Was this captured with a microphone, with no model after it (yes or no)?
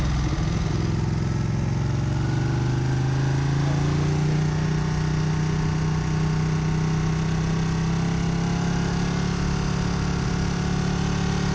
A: yes